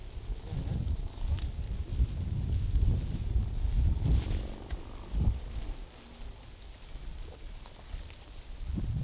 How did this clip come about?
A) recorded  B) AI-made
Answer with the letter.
A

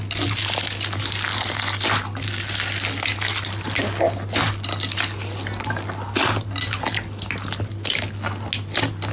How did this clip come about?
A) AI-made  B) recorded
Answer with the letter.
B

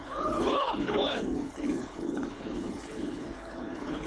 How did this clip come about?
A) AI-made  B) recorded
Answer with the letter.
A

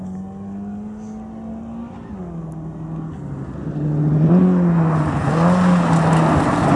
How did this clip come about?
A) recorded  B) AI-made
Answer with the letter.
A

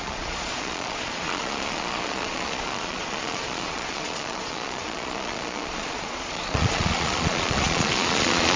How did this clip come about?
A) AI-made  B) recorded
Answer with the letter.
A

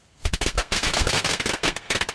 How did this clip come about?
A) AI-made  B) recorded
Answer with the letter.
A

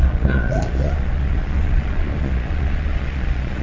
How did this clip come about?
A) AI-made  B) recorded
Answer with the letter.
A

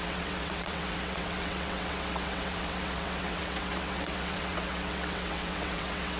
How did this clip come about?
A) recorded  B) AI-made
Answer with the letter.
B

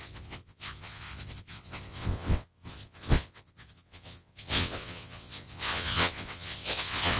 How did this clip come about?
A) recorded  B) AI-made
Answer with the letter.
B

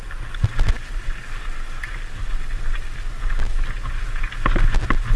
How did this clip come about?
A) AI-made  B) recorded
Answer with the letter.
B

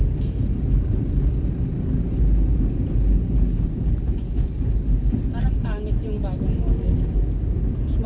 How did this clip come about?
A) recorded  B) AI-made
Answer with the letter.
A